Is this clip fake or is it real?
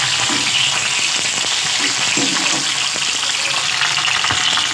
real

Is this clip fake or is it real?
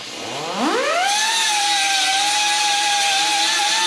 real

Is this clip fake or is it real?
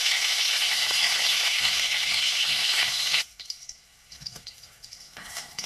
fake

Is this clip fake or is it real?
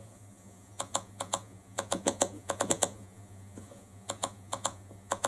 fake